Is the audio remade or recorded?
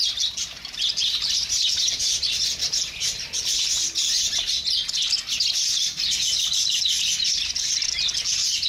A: recorded